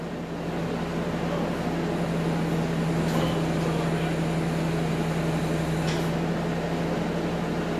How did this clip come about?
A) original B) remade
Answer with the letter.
A